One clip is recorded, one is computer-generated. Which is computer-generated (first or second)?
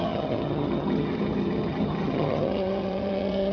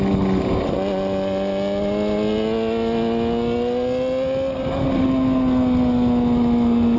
first